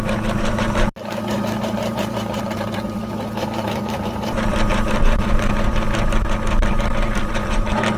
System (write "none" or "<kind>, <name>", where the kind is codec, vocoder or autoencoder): vocoder, BigVGAN v2